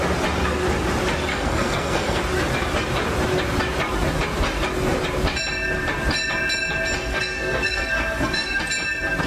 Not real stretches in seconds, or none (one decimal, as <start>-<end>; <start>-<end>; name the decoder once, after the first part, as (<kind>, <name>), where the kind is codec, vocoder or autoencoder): 1.3-2.2 (codec, SNAC); 7.1-8.6